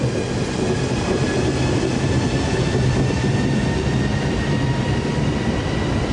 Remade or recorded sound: recorded